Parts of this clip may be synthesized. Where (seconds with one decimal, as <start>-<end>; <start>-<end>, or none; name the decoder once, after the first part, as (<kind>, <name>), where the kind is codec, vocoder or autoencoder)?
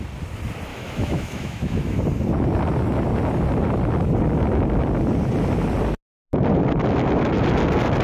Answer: 0.7-2.0 (autoencoder, DAC-VAE)